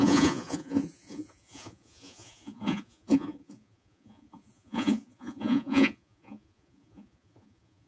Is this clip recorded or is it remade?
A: remade